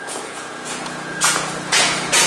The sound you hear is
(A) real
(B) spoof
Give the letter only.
B